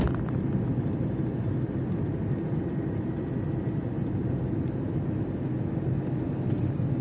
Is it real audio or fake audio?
real